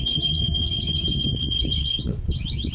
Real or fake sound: fake